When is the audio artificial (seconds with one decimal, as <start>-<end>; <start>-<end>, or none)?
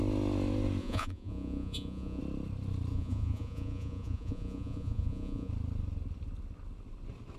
0.8-2.2; 2.9-5.5